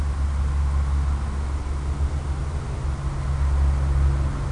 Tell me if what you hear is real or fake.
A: real